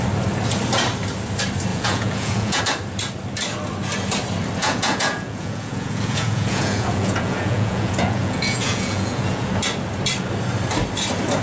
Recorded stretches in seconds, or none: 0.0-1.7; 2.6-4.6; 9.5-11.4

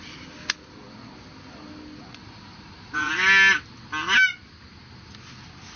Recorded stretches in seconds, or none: 0.0-2.1; 3.1-5.8

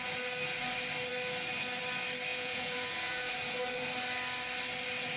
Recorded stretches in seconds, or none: 0.0-2.3; 3.3-5.2

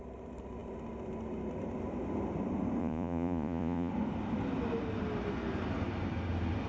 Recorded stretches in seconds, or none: 0.0-2.8; 3.9-6.7